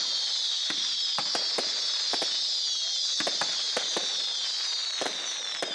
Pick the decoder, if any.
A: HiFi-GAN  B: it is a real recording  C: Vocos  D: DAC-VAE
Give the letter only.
B